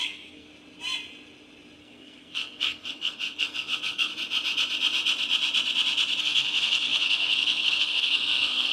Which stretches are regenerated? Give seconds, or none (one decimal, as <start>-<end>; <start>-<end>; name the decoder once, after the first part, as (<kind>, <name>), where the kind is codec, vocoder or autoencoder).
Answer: 0.0-0.5 (codec, SNAC); 1.8-4.1; 6.2-8.7